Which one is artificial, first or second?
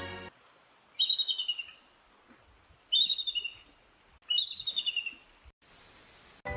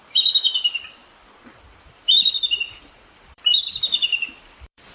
second